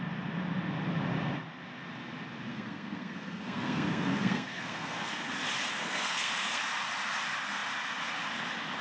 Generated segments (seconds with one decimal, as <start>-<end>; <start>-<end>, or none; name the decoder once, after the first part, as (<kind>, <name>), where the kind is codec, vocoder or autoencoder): 2.5-5.3 (codec, SNAC); 5.8-6.6